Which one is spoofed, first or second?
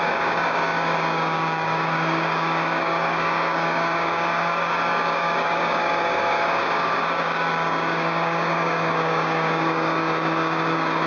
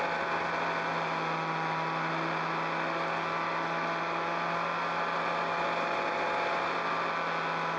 first